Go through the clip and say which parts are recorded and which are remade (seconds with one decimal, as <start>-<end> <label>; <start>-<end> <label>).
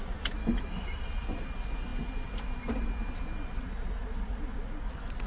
0.0-0.4 recorded; 0.4-1.0 remade; 1.0-5.3 recorded